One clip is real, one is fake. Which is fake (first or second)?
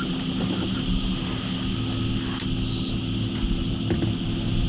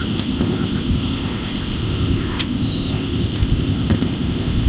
second